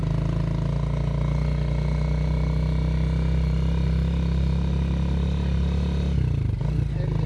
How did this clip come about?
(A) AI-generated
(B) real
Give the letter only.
B